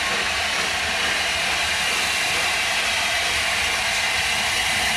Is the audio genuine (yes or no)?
yes